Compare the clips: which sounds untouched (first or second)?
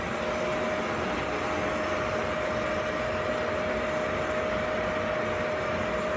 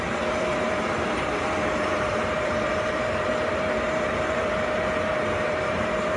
first